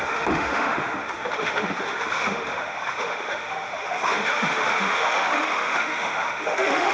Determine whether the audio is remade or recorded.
remade